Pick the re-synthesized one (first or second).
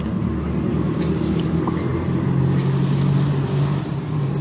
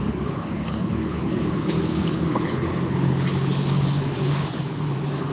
second